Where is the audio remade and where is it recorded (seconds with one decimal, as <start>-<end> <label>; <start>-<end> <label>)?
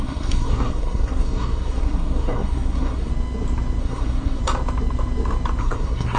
0.0-3.1 remade; 3.1-3.8 recorded; 3.8-4.4 remade; 4.4-5.6 recorded; 5.6-6.2 remade